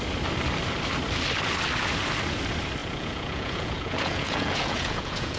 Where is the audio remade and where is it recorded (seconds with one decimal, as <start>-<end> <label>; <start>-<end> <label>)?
0.0-2.8 recorded; 2.8-5.4 remade